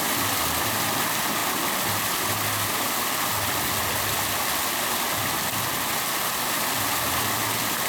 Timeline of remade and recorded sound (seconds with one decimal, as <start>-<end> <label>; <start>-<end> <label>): 0.0-7.9 recorded